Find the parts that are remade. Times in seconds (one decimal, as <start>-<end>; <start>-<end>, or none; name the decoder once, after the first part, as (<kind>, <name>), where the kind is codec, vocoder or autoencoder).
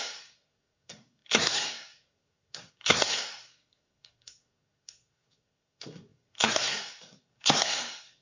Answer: 0.0-8.2 (codec, SNAC)